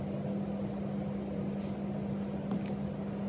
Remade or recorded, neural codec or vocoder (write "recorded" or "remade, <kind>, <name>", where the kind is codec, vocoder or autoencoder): recorded